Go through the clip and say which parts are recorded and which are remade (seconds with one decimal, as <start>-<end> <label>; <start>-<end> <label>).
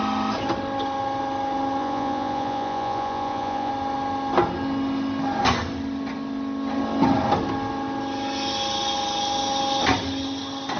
0.0-1.8 recorded; 1.8-3.7 remade; 3.7-10.8 recorded